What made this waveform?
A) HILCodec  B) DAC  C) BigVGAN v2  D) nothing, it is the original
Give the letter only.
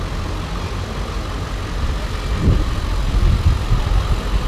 D